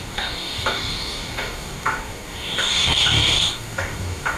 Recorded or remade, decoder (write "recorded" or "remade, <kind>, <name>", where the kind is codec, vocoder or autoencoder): remade, codec, DAC